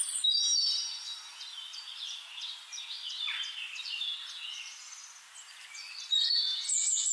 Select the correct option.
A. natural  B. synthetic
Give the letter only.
A